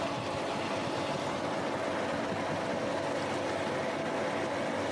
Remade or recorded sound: recorded